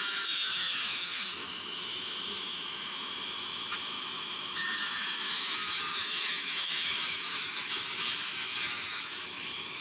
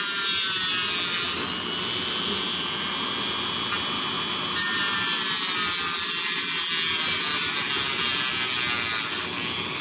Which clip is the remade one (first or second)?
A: first